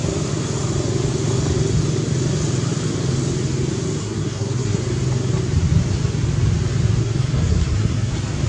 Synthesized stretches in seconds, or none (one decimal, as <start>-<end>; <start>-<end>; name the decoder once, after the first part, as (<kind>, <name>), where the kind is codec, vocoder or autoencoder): 4.0-4.8 (codec, SNAC); 7.0-8.1